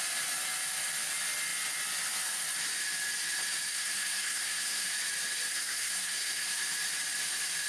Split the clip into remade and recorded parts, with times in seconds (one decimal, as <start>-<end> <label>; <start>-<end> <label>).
0.0-3.7 recorded; 3.7-4.9 remade; 4.9-5.5 recorded; 5.5-6.5 remade; 6.5-7.7 recorded